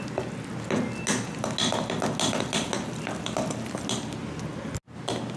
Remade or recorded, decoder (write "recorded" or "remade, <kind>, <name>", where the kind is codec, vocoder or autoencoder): recorded